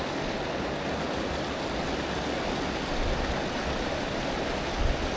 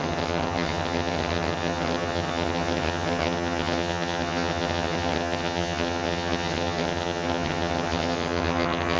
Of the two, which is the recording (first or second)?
first